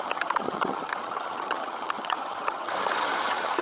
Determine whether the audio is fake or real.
fake